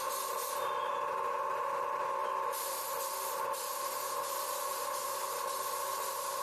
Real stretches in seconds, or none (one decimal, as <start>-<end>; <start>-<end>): 0.0-2.2; 3.6-6.4